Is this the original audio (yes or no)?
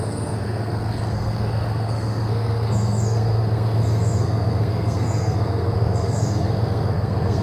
no